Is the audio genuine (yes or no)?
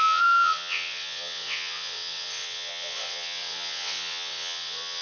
no